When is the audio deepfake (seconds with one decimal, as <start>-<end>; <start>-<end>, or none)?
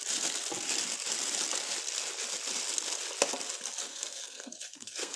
3.9-5.2